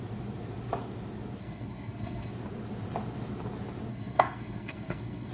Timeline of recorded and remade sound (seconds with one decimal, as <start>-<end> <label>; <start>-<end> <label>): 0.0-1.4 recorded; 1.4-2.3 remade; 2.3-3.9 recorded; 3.9-5.3 remade

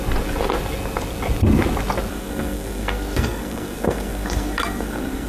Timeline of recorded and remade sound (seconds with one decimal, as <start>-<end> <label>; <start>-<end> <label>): 0.0-2.1 recorded; 2.1-5.3 remade